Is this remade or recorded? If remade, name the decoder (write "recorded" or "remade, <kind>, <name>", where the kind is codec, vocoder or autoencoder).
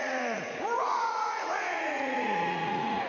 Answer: remade, vocoder, Vocos